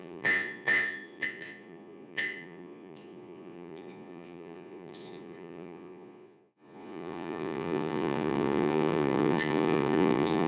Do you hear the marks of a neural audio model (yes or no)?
yes